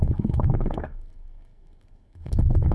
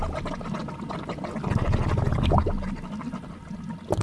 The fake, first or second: first